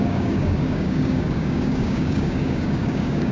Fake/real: fake